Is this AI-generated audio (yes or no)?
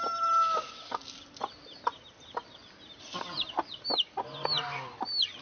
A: no